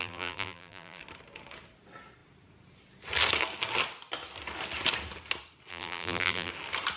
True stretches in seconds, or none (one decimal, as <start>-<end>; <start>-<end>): 1.0-5.7; 6.5-7.0